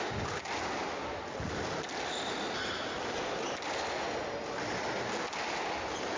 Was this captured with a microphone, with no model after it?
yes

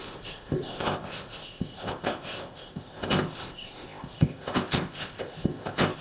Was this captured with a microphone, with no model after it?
no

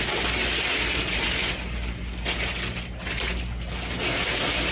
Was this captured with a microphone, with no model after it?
yes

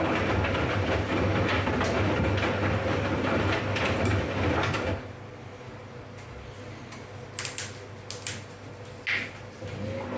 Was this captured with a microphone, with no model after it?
yes